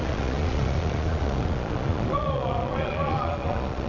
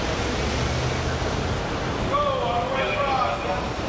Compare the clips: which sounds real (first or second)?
second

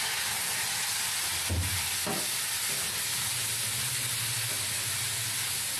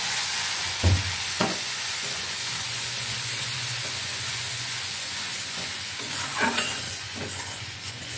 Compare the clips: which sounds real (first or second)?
first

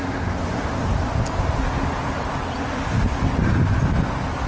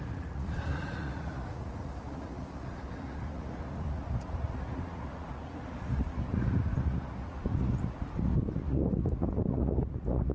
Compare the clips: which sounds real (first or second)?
first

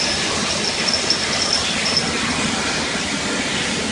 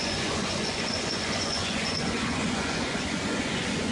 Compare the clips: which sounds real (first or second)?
first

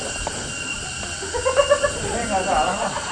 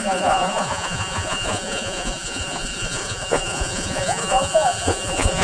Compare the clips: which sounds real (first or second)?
first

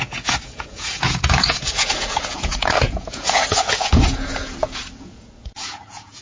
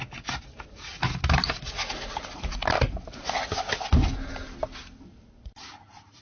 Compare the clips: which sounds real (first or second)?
second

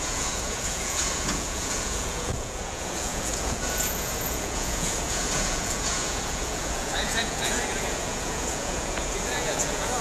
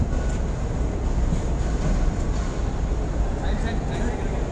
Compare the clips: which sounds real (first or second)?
second